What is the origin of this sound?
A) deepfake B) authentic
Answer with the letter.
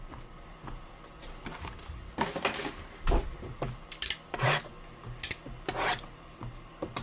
B